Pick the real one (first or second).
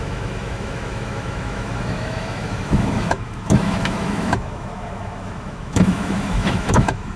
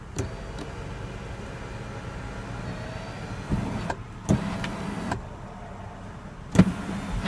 second